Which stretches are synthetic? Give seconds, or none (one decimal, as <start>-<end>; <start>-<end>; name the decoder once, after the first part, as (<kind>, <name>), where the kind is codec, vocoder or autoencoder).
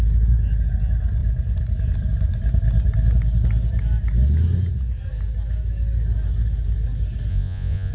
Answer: 7.3-7.9 (vocoder, Vocos)